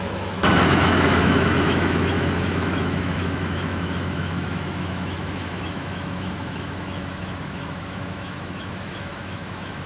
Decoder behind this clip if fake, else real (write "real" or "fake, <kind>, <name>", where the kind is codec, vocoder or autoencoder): fake, autoencoder, DAC-VAE